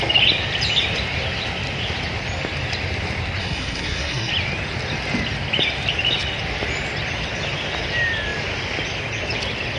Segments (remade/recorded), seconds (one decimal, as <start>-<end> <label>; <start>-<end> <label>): 0.0-3.4 recorded; 3.4-4.3 remade; 4.3-9.8 recorded